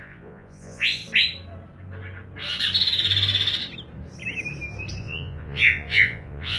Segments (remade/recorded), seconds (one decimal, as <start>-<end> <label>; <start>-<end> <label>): 0.0-1.0 remade; 1.0-5.0 recorded; 5.0-6.6 remade